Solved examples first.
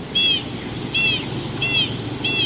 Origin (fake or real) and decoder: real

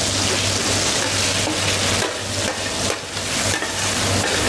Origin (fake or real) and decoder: real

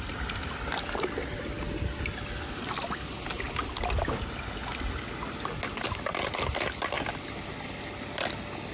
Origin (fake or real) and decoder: real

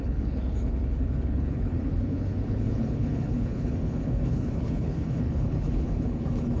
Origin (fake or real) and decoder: fake, codec, HILCodec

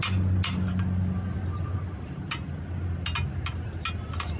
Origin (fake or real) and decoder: real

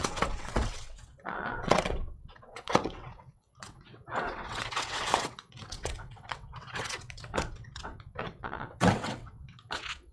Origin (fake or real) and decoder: fake, vocoder, WaveNeXt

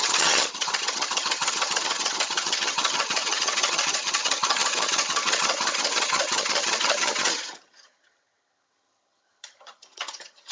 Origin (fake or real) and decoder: fake, vocoder, HiFi-GAN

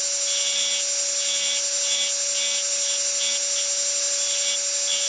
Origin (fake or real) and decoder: real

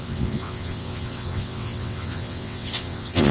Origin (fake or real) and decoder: fake, vocoder, WaveNeXt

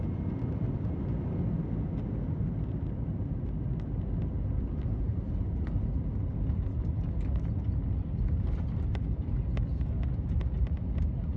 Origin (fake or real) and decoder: real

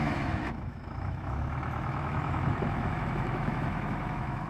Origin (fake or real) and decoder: fake, autoencoder, DAC-VAE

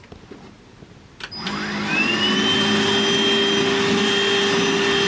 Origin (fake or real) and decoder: real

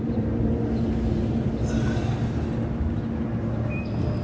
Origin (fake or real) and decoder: real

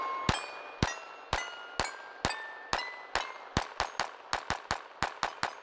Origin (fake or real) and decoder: real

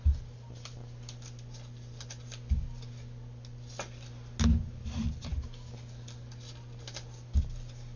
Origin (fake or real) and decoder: real